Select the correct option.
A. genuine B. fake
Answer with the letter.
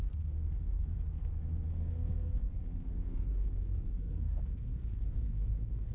B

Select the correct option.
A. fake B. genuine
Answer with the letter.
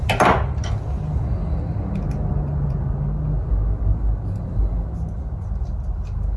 B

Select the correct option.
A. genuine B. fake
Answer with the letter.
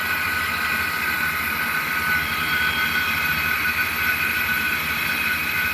B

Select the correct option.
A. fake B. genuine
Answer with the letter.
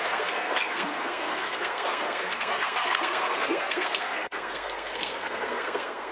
A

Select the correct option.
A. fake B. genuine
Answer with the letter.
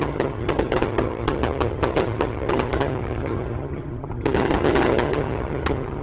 A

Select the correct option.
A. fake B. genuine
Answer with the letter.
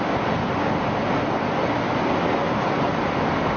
B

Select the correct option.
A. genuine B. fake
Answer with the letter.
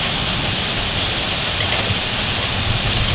A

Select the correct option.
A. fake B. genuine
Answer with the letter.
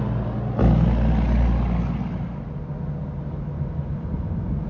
B